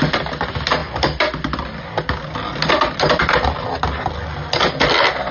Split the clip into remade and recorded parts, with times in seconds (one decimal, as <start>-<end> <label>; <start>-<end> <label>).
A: 0.0-5.3 recorded